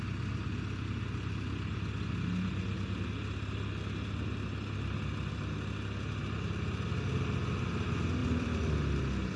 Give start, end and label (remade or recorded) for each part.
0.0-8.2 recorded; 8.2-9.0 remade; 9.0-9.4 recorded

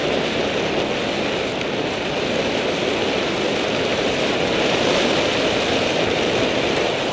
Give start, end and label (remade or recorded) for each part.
0.0-0.5 remade; 0.5-3.9 recorded; 3.9-4.5 remade; 4.5-7.1 recorded

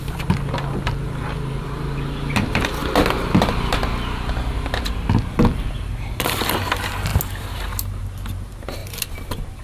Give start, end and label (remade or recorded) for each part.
0.0-2.8 remade; 2.8-5.2 recorded; 5.2-7.1 remade; 7.1-8.0 recorded; 8.0-8.8 remade; 8.8-9.6 recorded

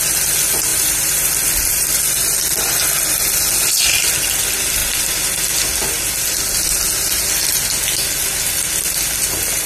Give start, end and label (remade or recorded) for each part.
0.0-0.7 recorded; 0.7-2.0 remade; 2.0-9.7 recorded

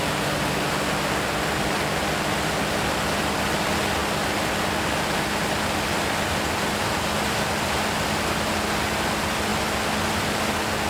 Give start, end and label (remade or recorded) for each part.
0.0-10.9 recorded

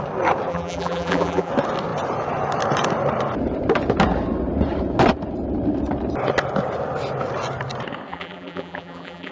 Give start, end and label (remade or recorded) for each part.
0.0-0.5 recorded; 0.5-1.5 remade; 1.5-8.1 recorded; 8.1-9.3 remade

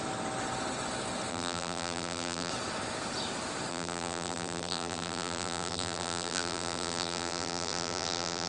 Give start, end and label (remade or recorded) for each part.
0.0-1.3 recorded; 1.3-2.5 remade; 2.5-3.7 recorded; 3.7-8.5 remade

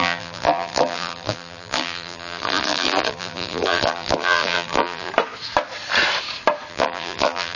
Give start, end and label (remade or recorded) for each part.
0.0-5.1 remade; 5.1-6.7 recorded; 6.7-7.6 remade